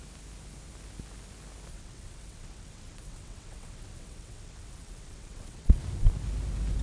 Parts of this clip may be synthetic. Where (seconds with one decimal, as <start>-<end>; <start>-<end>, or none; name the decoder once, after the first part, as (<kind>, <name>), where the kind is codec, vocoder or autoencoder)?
1.7-5.8 (vocoder, WaveNeXt)